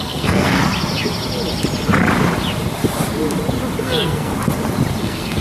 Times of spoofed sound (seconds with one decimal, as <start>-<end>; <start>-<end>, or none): 0.0-0.6; 3.8-4.3; 5.0-5.4